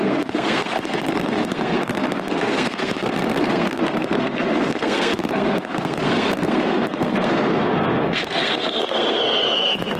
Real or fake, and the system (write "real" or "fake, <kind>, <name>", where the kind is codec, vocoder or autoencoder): fake, codec, SNAC